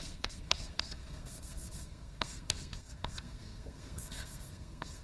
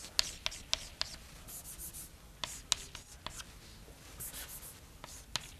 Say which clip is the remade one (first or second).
first